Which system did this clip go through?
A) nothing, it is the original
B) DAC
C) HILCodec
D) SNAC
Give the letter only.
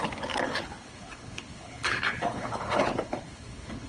C